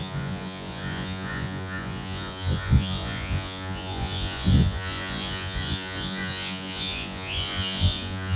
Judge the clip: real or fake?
fake